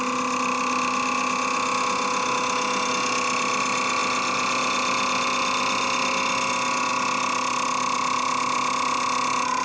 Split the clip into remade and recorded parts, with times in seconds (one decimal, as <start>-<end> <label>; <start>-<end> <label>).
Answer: 0.0-9.6 recorded